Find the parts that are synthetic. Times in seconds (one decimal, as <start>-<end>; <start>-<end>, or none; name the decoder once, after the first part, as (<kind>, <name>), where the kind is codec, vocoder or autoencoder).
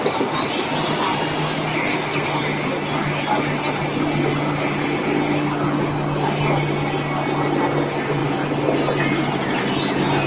1.9-2.4 (codec, SNAC)